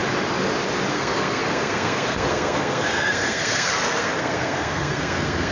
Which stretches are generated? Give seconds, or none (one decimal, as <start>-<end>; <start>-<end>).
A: 0.9-5.5